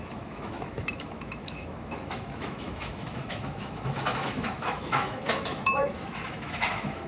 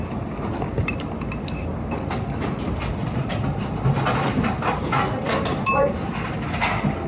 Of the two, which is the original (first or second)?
second